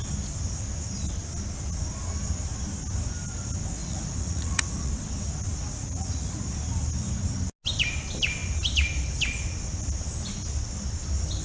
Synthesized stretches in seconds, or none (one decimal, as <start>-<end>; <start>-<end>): 3.8-4.9; 5.6-6.4